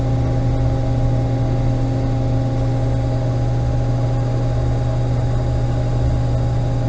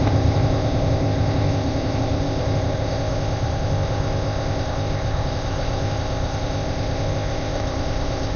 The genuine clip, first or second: first